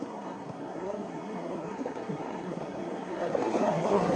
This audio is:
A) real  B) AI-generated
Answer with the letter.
B